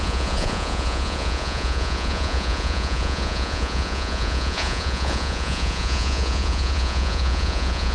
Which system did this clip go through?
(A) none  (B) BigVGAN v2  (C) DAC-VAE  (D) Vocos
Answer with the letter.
D